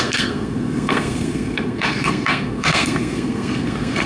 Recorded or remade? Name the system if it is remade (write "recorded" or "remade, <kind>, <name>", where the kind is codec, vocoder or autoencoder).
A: remade, codec, SNAC